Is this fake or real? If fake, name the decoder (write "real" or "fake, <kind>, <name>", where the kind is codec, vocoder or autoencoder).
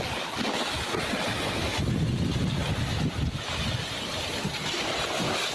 real